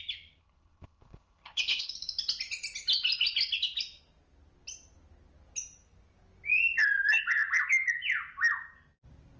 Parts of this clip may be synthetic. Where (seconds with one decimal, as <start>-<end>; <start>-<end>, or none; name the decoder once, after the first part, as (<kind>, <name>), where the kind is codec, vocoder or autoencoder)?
0.4-1.9 (codec, HILCodec)